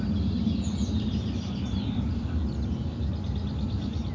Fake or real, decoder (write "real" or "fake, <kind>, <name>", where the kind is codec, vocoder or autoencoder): real